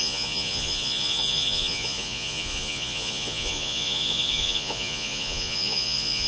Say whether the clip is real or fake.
fake